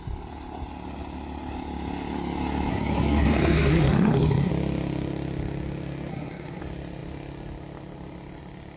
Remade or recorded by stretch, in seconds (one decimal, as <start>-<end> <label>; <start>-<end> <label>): 0.0-2.7 recorded; 2.7-4.5 remade; 4.5-6.1 recorded; 6.1-6.6 remade; 6.6-8.8 recorded